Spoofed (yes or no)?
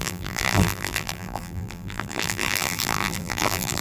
yes